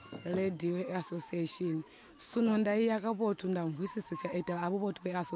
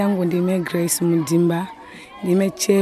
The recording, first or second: second